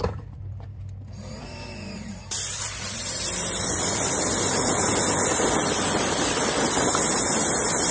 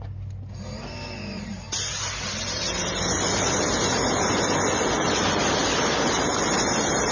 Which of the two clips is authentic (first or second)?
second